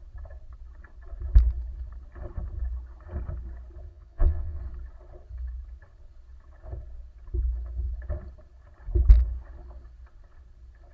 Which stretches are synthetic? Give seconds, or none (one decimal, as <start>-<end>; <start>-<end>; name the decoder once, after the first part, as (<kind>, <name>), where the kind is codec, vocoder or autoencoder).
3.9-4.6 (vocoder, Vocos)